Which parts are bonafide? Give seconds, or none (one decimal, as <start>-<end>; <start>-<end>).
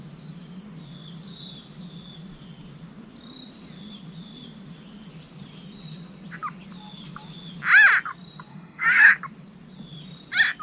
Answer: 0.0-8.5; 9.1-10.6